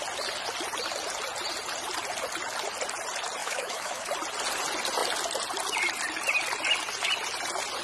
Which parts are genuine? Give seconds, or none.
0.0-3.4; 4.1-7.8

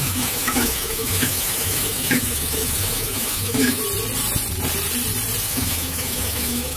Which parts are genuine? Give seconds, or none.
3.8-5.4

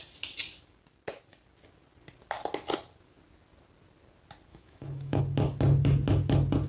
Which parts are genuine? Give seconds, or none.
0.0-4.5; 5.2-6.7